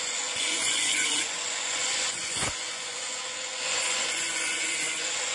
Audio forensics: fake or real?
fake